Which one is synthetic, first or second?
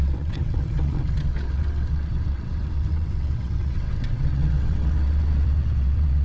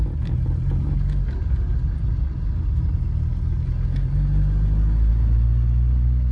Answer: first